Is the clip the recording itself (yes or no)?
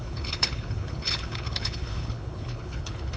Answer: no